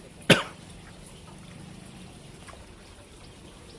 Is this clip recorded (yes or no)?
yes